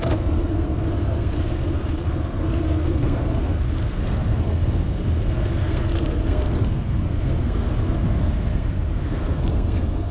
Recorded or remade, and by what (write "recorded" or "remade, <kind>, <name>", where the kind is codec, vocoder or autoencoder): remade, codec, SNAC